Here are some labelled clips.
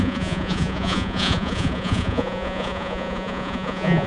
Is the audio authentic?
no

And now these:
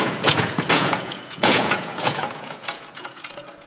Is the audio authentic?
no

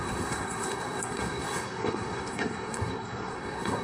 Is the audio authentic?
no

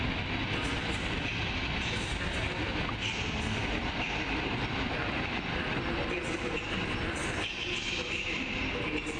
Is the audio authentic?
yes